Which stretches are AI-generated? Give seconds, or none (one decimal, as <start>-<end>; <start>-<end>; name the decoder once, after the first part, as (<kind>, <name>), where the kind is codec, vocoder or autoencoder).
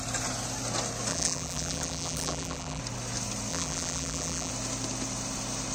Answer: 1.1-2.8 (vocoder, BigVGAN v2); 3.5-4.5